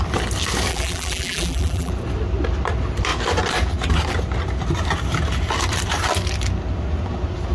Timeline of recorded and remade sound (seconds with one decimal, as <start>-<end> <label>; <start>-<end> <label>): 0.0-0.7 recorded; 0.7-1.9 remade; 1.9-7.5 recorded